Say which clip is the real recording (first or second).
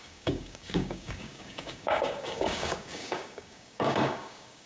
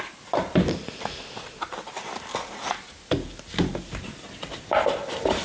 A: second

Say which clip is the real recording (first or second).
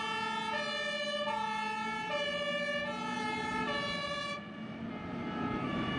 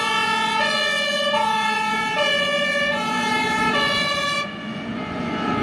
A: first